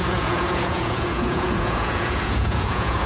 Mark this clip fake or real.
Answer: fake